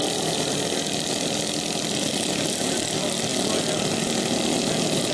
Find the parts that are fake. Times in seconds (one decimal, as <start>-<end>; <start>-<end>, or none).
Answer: none